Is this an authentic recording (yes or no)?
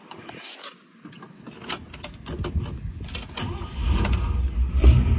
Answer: yes